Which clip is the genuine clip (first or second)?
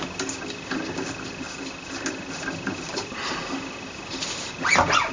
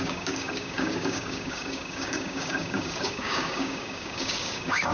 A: first